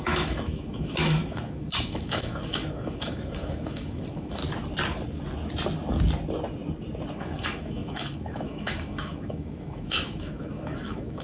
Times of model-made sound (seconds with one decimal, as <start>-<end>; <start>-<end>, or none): 0.0-4.4; 7.1-11.2